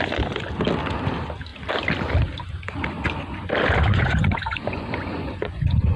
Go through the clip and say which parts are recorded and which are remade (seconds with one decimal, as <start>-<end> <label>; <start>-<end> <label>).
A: 0.0-3.9 recorded; 3.9-6.0 remade

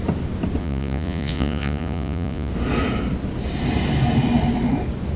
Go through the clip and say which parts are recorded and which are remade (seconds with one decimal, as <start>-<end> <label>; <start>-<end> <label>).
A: 0.0-0.6 recorded; 0.6-2.5 remade; 2.5-5.2 recorded

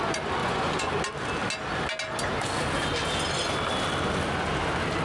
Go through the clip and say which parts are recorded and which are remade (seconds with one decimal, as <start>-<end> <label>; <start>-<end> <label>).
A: 0.0-0.4 recorded; 0.4-0.9 remade; 0.9-5.0 recorded

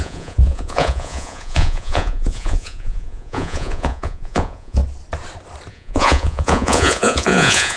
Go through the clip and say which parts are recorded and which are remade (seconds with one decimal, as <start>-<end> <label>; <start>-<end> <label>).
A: 0.0-4.8 remade; 4.8-5.7 recorded; 5.7-7.8 remade

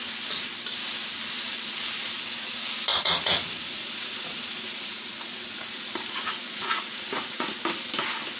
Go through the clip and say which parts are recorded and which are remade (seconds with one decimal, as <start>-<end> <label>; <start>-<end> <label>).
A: 0.0-2.9 recorded; 2.9-5.9 remade; 5.9-6.6 recorded; 6.6-7.5 remade; 7.5-8.4 recorded

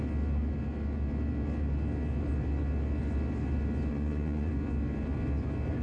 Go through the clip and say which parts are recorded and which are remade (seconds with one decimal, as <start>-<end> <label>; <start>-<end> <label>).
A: 0.0-3.9 recorded; 3.9-4.5 remade; 4.5-5.8 recorded

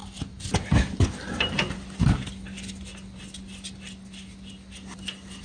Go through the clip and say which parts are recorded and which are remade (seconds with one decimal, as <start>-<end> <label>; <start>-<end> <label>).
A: 0.0-5.4 recorded

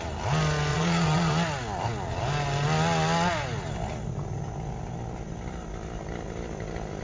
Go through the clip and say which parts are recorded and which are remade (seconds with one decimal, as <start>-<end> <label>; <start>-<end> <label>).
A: 0.0-0.7 recorded; 0.7-1.3 remade; 1.3-7.0 recorded